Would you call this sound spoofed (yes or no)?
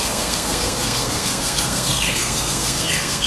yes